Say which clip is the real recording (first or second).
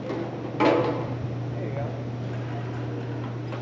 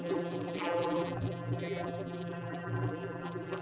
first